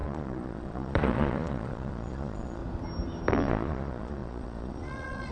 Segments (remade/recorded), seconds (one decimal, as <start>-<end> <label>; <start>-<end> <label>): 0.0-2.6 remade; 2.6-3.3 recorded; 3.3-5.3 remade